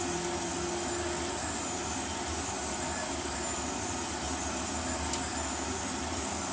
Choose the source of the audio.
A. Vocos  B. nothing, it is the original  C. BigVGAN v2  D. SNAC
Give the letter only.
B